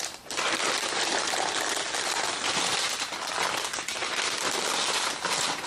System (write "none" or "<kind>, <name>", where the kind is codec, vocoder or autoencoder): none